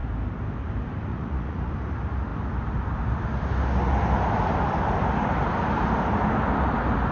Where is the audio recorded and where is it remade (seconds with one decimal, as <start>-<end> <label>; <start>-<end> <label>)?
0.0-1.1 recorded; 1.1-1.7 remade; 1.7-7.1 recorded